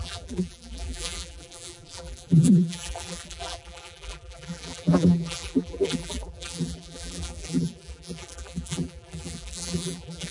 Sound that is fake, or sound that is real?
fake